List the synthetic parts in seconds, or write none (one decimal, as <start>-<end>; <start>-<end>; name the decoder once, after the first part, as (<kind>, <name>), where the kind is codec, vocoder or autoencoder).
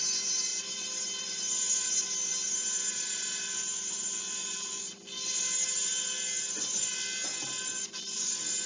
none